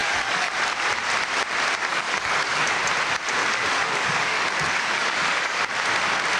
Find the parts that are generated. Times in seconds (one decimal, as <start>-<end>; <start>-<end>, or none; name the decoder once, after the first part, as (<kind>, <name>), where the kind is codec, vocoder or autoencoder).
0.0-0.5 (codec, DAC); 1.9-2.8; 3.4-5.6